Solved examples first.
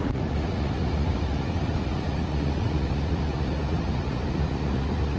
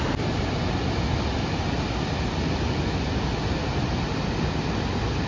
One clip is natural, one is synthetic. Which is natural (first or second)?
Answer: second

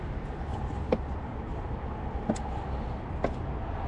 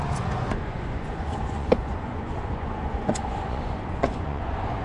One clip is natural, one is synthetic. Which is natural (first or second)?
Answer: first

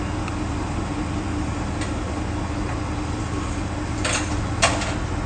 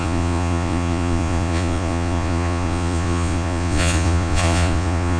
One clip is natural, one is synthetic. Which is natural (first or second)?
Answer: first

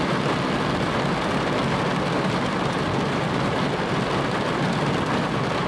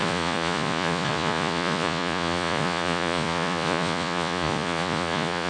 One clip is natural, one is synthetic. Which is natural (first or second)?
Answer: first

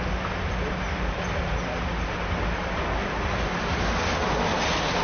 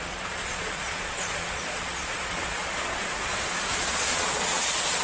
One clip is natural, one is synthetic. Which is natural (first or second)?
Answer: first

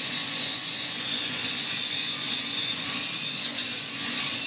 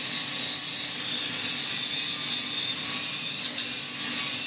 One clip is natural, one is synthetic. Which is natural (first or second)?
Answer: second